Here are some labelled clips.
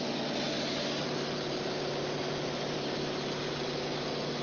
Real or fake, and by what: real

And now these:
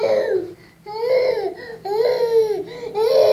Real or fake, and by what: real